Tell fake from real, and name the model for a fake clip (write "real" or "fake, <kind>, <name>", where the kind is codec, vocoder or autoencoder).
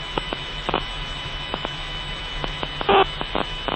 fake, autoencoder, DAC-VAE